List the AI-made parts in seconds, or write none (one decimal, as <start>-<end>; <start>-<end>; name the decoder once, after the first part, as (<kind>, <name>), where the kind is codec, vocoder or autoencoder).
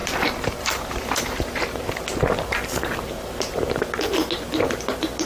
0.0-1.9 (vocoder, BigVGAN v2)